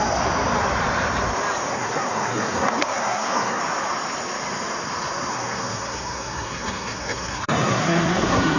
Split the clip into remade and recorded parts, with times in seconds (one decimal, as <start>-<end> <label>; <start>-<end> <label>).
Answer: 0.0-1.7 recorded; 1.7-3.6 remade; 3.6-5.3 recorded; 5.3-8.6 remade